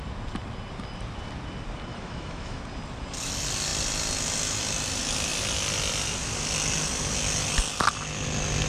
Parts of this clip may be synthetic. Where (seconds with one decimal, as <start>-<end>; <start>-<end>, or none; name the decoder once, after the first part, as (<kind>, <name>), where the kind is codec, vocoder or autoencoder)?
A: 1.9-2.6 (autoencoder, DAC-VAE)